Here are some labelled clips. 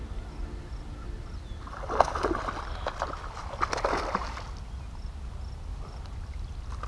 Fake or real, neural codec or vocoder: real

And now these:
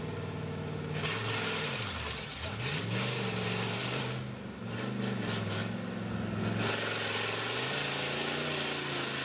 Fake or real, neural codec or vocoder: real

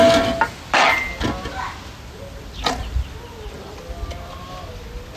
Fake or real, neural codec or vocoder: real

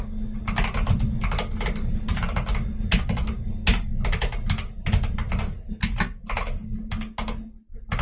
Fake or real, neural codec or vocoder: real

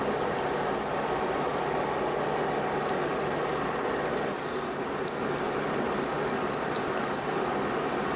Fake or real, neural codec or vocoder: real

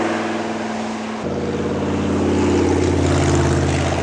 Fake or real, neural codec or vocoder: real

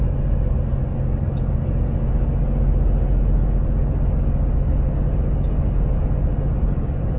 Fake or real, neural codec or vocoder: real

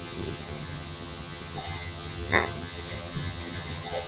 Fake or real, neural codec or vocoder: fake, vocoder, HiFi-GAN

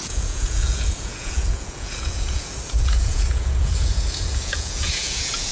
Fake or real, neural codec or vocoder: fake, vocoder, Vocos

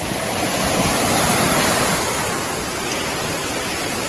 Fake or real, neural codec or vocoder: real